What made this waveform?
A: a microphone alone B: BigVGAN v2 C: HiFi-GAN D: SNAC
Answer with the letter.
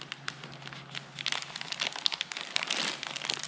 A